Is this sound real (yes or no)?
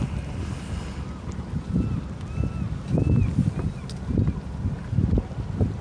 yes